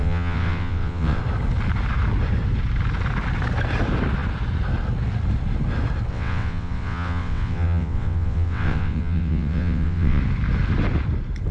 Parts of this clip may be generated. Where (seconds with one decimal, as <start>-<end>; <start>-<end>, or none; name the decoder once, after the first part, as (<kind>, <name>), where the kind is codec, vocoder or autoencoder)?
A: 0.0-1.2 (vocoder, WaveNeXt); 6.1-10.2